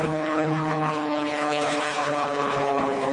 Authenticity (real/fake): fake